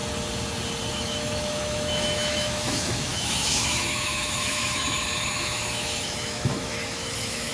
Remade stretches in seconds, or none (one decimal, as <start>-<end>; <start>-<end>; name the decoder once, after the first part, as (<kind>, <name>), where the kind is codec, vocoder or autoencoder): 0.9-7.5 (autoencoder, DAC-VAE)